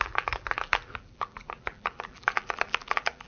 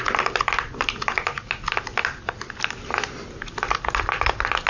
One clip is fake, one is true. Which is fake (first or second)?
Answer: first